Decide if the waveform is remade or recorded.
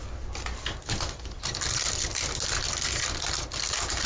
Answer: recorded